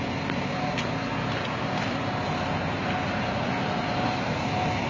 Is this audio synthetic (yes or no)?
no